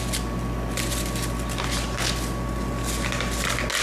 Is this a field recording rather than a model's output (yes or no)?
yes